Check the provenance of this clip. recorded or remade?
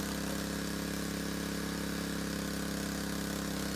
recorded